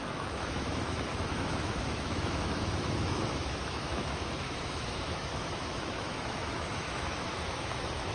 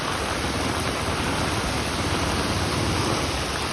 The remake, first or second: first